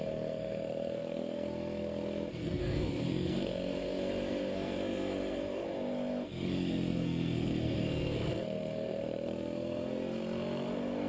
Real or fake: fake